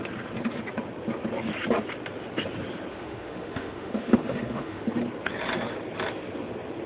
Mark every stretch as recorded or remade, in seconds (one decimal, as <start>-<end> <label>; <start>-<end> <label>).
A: 0.0-2.9 recorded; 2.9-4.8 remade; 4.8-6.9 recorded